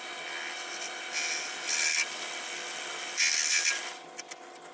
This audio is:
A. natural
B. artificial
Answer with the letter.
A